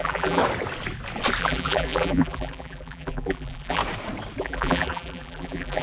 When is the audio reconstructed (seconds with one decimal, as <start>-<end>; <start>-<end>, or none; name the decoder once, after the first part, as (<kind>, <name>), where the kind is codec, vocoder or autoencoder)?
0.0-0.4 (vocoder, BigVGAN v2); 1.4-3.8; 4.4-5.8